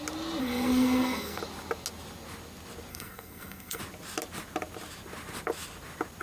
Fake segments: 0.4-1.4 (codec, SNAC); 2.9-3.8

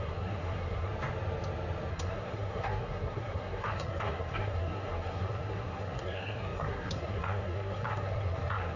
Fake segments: 0.0-0.9 (codec, SNAC); 1.9-8.8

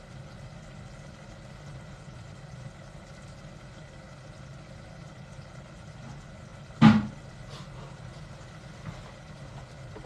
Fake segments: none

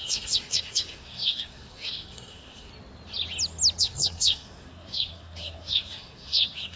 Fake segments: 0.0-2.7 (codec, SNAC); 3.8-6.8